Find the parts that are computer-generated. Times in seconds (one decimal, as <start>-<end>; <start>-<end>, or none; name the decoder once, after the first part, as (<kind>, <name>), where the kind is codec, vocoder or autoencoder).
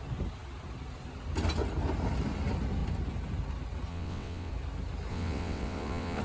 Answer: 3.9-4.5 (vocoder, WaveNeXt); 5.1-6.2